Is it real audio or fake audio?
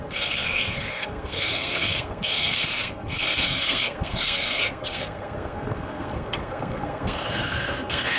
fake